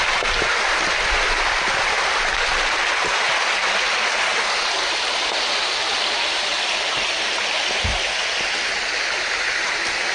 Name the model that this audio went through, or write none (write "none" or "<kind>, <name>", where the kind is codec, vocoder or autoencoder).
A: none